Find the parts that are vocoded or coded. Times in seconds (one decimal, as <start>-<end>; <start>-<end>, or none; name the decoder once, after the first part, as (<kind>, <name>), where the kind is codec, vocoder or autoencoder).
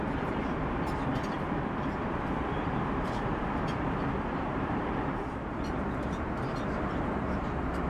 0.0-1.1 (vocoder, BigVGAN v2); 1.7-7.9